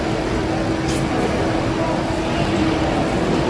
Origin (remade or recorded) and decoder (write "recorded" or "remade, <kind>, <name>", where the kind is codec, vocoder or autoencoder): recorded